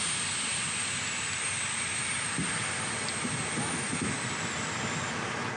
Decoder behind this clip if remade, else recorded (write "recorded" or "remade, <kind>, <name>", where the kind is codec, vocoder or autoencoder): recorded